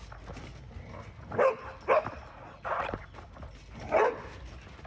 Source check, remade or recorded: recorded